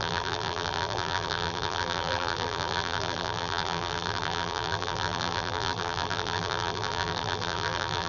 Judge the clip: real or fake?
fake